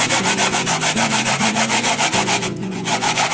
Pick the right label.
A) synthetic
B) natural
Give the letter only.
A